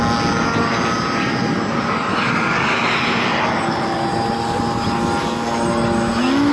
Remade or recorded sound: recorded